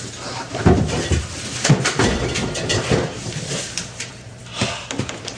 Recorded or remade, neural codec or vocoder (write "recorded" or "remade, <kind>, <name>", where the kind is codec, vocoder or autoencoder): remade, vocoder, BigVGAN v2